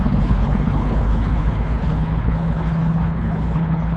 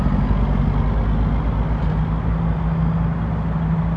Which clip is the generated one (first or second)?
first